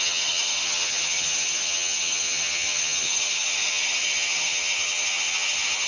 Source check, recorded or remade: remade